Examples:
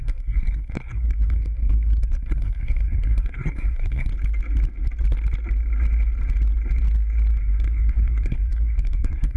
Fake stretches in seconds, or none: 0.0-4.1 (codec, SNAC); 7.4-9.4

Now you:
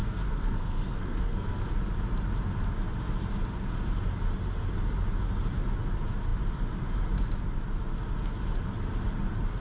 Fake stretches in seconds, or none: 0.0-1.7 (codec, SNAC)

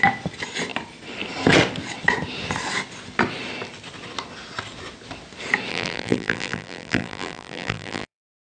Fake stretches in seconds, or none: 5.7-8.2 (vocoder, BigVGAN v2)

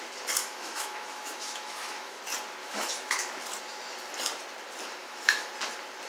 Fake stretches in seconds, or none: 0.4-2.2 (autoencoder, DAC-VAE); 2.6-3.3; 5.0-5.5

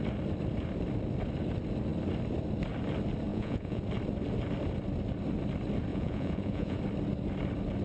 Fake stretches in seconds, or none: 3.3-3.8 (vocoder, Vocos); 5.9-6.8

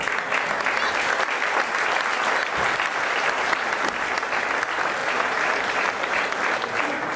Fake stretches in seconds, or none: 5.0-6.3 (vocoder, BigVGAN v2)

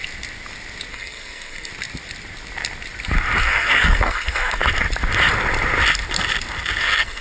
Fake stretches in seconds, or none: 0.9-1.7 (codec, SNAC); 3.4-4.6; 6.8-7.2

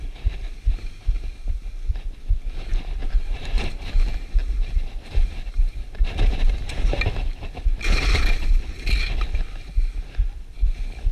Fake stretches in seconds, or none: 3.0-7.0 (vocoder, BigVGAN v2)